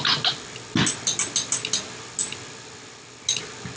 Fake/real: real